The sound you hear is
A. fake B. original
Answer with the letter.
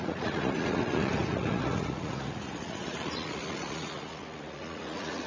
A